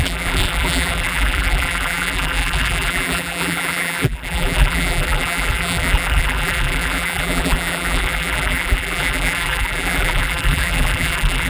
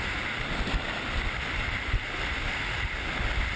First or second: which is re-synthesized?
first